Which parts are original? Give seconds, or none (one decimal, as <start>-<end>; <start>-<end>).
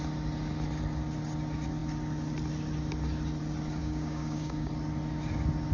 0.0-3.8; 4.7-5.7